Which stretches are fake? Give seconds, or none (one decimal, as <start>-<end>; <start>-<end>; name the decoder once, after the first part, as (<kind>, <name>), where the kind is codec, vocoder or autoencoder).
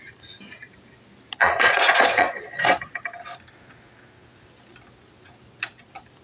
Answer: 1.4-3.0 (vocoder, Vocos)